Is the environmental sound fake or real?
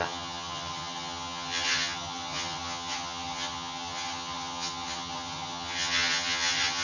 fake